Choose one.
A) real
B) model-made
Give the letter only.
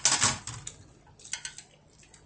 A